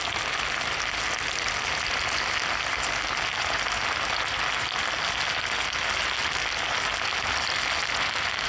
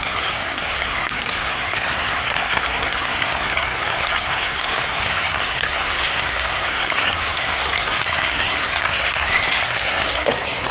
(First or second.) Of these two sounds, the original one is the first